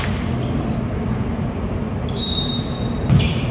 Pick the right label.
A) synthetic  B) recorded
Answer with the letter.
B